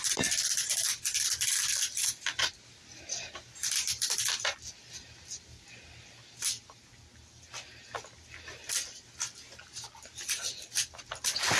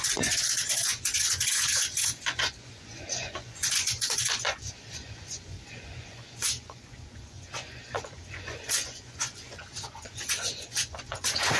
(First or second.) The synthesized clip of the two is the second